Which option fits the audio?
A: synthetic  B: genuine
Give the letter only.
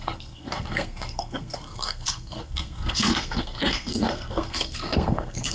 A